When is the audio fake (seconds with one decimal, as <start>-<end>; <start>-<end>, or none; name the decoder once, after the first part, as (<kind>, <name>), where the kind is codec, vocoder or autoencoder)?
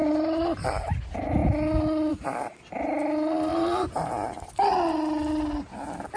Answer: 0.0-0.9 (vocoder, BigVGAN v2); 3.5-4.5